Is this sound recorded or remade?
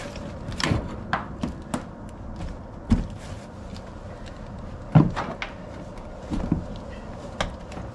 recorded